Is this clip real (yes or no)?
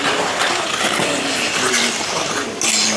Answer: yes